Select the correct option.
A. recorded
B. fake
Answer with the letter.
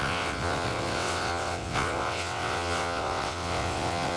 B